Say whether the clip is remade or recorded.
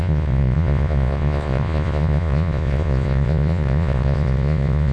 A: remade